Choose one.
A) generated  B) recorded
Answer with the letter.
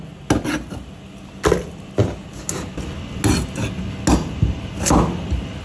B